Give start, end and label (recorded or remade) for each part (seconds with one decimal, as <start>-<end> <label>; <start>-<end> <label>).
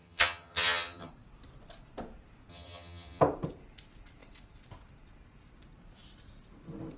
0.0-1.1 remade; 1.1-2.5 recorded; 2.5-3.2 remade; 3.2-7.0 recorded